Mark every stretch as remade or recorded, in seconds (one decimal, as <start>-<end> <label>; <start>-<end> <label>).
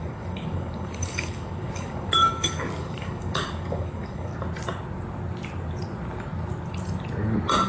0.0-4.3 remade; 4.3-7.7 recorded